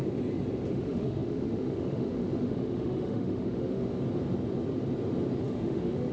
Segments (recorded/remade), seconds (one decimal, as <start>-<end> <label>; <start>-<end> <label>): 0.0-0.7 recorded; 0.7-3.9 remade; 3.9-5.4 recorded; 5.4-6.1 remade

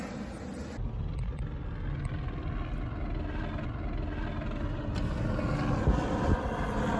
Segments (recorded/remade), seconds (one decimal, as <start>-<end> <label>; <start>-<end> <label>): 0.0-7.0 recorded